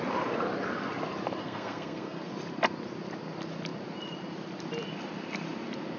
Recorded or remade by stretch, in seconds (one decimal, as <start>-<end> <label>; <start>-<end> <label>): 0.0-1.4 recorded; 1.4-2.3 remade; 2.3-6.0 recorded

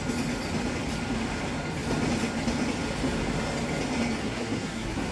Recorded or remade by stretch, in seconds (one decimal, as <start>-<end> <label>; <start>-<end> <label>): 0.0-4.2 recorded; 4.2-5.1 remade

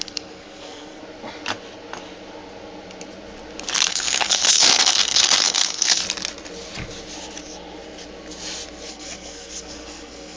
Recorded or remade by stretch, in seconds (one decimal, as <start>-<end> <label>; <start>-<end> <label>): 0.0-1.0 remade; 1.0-3.9 recorded; 3.9-6.0 remade; 6.0-8.9 recorded; 8.9-10.4 remade

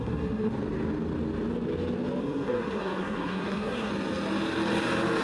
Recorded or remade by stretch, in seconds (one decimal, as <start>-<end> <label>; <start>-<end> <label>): 0.0-0.5 remade; 0.5-2.2 recorded; 2.2-3.9 remade; 3.9-5.2 recorded

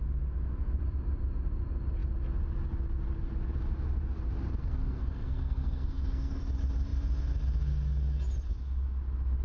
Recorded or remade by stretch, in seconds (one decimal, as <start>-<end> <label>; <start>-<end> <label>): 0.0-4.6 recorded; 4.6-6.4 remade; 6.4-9.4 recorded

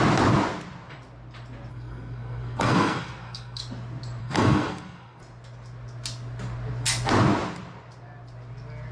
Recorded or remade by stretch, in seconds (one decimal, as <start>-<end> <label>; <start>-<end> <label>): 0.0-1.7 recorded; 1.7-3.6 remade; 3.6-4.2 recorded; 4.2-5.2 remade; 5.2-8.9 recorded

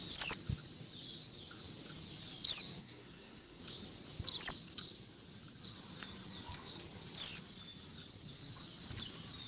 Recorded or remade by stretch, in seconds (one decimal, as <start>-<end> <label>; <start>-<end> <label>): 0.0-2.8 recorded; 2.8-3.6 remade; 3.6-9.5 recorded